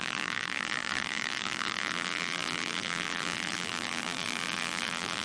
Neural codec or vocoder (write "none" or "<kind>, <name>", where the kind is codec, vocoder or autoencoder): vocoder, BigVGAN v2